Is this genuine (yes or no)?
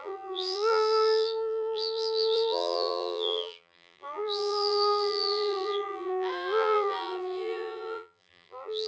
no